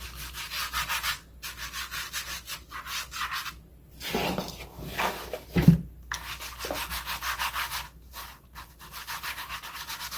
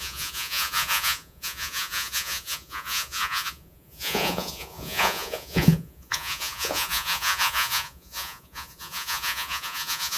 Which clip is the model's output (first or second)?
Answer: second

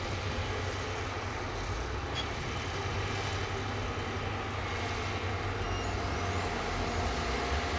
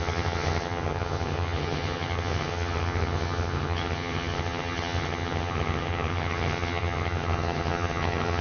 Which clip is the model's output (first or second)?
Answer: second